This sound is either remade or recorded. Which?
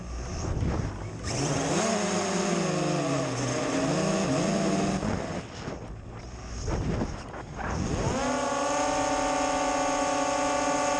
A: recorded